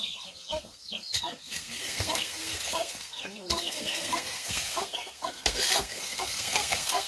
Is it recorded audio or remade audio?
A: remade